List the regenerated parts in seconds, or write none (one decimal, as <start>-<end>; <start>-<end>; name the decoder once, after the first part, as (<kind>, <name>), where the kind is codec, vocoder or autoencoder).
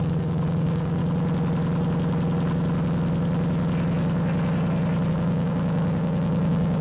0.0-1.0 (codec, DAC); 5.1-6.8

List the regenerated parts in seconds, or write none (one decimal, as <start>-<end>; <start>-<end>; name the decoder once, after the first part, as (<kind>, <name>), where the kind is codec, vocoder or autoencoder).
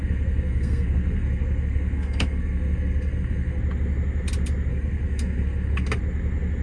0.0-3.6 (codec, SNAC); 4.7-6.0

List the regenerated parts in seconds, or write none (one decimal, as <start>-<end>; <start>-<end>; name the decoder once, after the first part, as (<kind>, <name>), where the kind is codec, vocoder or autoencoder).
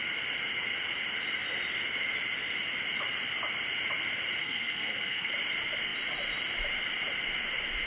4.4-5.3 (codec, SNAC)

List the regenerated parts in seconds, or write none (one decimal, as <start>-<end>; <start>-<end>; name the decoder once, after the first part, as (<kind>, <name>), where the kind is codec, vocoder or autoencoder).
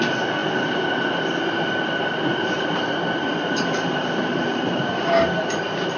2.3-5.1 (vocoder, BigVGAN v2)